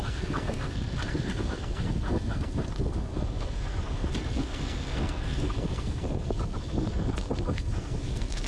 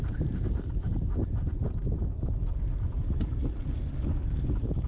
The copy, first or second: first